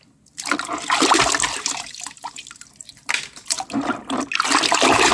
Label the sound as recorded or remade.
recorded